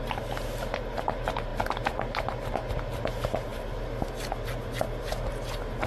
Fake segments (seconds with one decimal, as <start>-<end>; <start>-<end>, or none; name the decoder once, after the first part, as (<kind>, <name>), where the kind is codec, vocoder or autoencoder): none